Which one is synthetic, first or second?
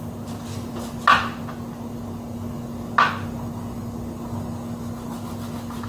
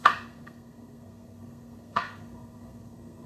second